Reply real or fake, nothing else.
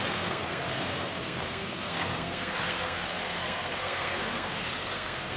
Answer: fake